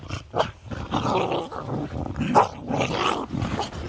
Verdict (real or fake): real